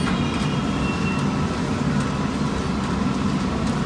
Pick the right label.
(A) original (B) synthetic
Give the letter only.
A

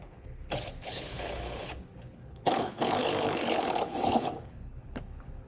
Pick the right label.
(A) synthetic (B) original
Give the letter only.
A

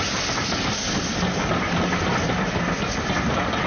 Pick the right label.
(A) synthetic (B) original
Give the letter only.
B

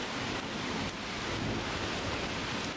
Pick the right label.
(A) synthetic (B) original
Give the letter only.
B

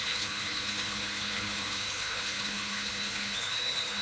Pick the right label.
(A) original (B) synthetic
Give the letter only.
B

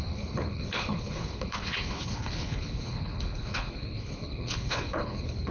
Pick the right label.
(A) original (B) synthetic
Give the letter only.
B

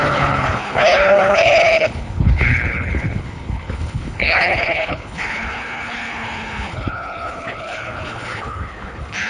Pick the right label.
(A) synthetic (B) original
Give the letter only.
A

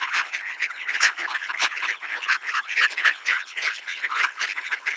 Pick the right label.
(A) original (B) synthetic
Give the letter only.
B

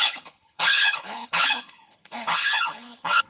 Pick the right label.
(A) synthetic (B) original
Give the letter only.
A